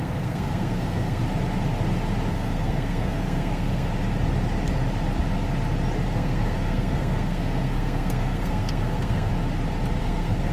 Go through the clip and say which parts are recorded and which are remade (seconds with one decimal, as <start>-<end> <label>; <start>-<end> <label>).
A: 0.0-1.2 remade; 1.2-2.3 recorded; 2.3-3.9 remade; 3.9-6.1 recorded; 6.1-9.3 remade; 9.3-10.0 recorded; 10.0-10.5 remade